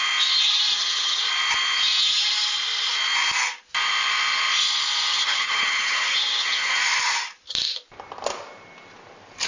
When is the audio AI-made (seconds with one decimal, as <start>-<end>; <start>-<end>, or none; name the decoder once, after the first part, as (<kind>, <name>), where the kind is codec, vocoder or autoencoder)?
0.7-1.2 (vocoder, HiFi-GAN); 5.1-6.8